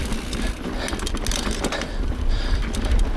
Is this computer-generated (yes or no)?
no